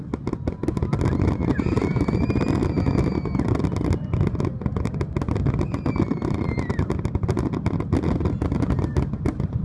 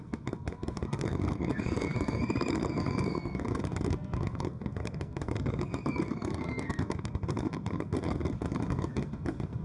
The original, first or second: first